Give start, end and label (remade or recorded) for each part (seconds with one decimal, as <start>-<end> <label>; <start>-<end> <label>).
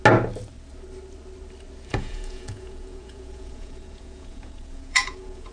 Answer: 0.0-1.9 recorded; 1.9-5.5 remade